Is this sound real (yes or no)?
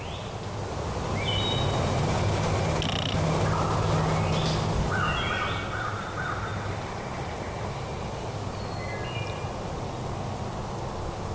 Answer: yes